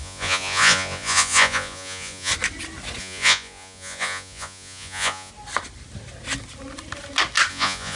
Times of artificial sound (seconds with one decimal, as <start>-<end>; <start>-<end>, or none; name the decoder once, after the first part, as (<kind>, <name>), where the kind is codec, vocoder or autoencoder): 0.0-2.3 (vocoder, Vocos); 3.0-5.3; 7.5-8.0